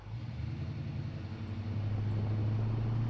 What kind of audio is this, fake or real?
real